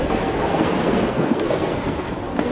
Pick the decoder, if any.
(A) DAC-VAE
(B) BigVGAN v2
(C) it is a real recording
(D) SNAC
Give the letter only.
D